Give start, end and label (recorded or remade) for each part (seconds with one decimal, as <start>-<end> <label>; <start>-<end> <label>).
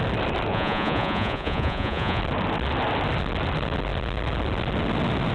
0.0-0.5 recorded; 0.5-2.2 remade; 2.2-5.3 recorded